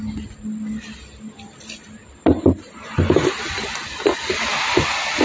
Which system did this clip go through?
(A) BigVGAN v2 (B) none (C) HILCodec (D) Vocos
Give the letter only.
B